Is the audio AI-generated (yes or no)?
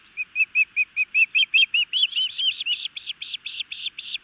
no